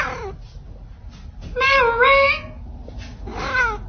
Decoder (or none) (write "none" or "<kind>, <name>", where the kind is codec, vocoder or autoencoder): none